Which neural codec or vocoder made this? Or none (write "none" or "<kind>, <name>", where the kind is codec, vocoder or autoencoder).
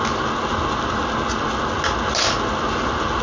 none